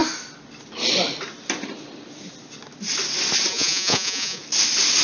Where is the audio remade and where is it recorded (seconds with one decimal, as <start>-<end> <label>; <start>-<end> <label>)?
0.0-3.5 recorded; 3.5-4.4 remade; 4.4-5.0 recorded